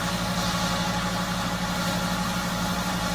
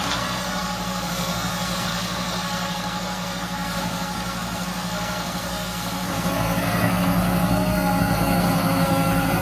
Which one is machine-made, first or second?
second